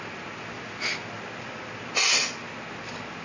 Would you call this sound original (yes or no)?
yes